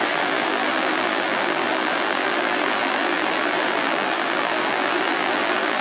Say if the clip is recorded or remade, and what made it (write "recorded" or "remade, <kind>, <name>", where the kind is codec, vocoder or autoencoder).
remade, vocoder, BigVGAN v2